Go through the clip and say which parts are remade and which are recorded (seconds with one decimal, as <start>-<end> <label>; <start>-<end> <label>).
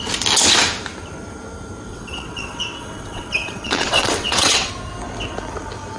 0.0-1.9 recorded; 1.9-4.7 remade; 4.7-6.0 recorded